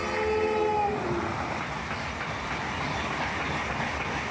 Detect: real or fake real